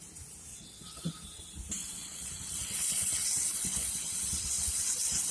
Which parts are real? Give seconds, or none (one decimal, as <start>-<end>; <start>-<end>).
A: 0.0-0.5; 1.1-1.8